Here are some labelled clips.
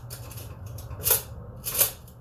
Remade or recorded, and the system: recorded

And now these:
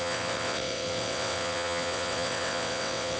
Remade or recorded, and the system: remade, vocoder, WaveNeXt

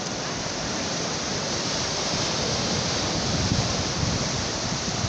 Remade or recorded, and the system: remade, vocoder, BigVGAN v2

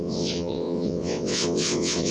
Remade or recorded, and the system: remade, vocoder, WaveNeXt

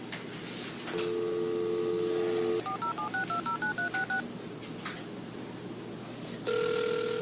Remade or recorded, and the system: recorded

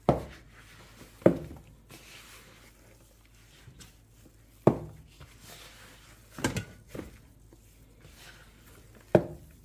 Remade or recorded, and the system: recorded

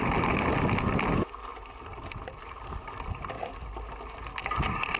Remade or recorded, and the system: recorded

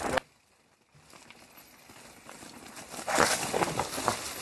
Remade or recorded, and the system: recorded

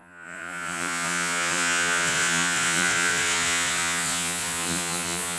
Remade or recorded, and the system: remade, vocoder, Vocos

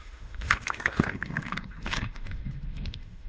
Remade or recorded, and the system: remade, autoencoder, DAC-VAE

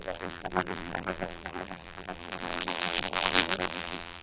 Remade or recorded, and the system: remade, vocoder, BigVGAN v2